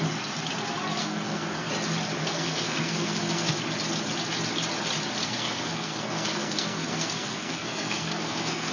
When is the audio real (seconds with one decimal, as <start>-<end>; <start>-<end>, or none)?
0.0-1.0; 1.7-2.2; 3.5-5.2